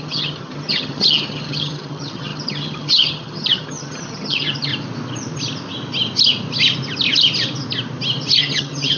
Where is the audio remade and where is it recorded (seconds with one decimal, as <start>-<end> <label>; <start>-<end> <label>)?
0.0-4.7 remade; 4.7-8.4 recorded; 8.4-9.0 remade